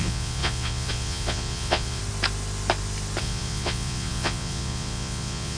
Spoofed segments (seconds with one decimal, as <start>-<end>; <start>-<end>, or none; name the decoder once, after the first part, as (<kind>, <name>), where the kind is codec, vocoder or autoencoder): 0.0-2.0 (vocoder, Vocos); 3.2-5.6